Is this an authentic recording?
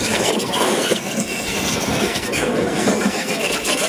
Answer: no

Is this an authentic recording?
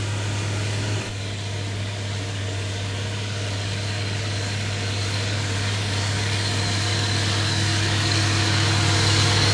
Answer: no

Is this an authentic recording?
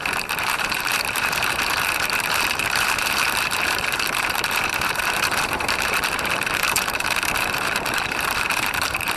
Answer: no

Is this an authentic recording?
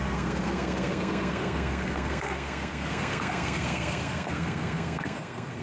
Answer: no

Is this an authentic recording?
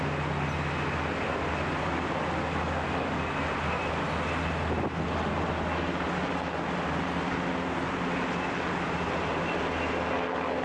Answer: yes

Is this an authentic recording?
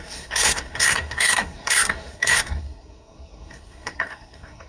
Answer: no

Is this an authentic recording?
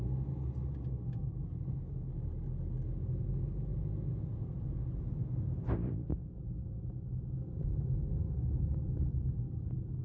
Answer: yes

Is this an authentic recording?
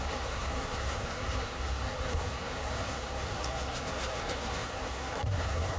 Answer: no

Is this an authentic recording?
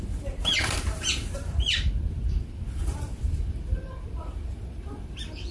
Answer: no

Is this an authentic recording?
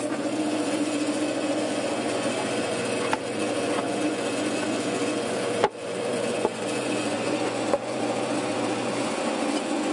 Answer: no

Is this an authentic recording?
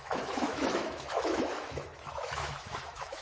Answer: no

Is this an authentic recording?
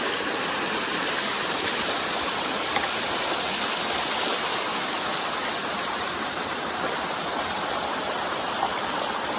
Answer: no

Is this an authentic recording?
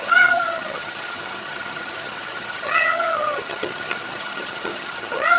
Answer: no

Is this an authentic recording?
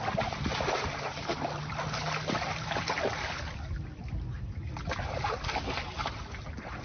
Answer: yes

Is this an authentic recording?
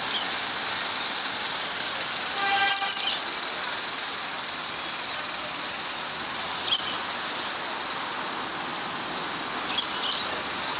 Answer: yes